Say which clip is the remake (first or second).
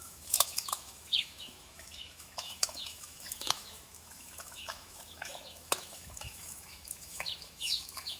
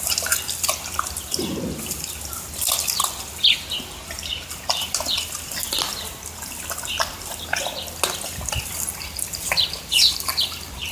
first